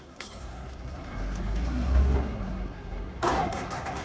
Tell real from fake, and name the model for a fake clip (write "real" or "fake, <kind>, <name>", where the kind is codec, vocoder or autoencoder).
fake, codec, SNAC